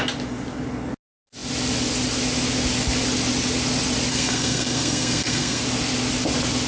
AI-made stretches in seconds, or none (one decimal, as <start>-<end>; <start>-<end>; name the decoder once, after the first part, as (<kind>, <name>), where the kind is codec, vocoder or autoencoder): 4.1-5.6 (codec, SNAC)